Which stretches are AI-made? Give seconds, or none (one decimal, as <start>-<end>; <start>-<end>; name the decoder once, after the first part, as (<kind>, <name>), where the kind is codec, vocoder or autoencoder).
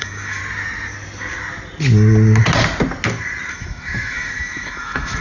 0.0-0.4 (autoencoder, DAC-VAE); 3.5-5.2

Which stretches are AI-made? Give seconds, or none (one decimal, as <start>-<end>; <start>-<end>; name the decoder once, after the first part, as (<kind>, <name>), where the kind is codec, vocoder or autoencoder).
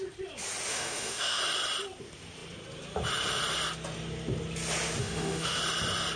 0.7-1.4 (autoencoder, DAC-VAE); 5.0-5.6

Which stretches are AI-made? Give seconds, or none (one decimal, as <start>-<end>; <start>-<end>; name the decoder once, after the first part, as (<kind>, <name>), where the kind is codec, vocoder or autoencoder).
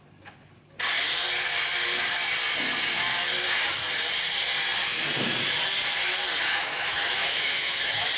6.5-8.2 (autoencoder, DAC-VAE)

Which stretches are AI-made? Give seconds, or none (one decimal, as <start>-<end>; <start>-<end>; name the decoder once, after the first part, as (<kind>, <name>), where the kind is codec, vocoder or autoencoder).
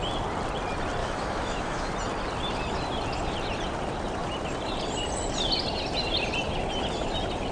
1.0-1.9 (autoencoder, DAC-VAE)